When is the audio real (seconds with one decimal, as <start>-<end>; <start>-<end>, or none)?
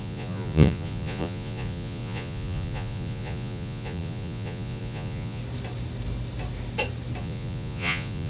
5.4-7.2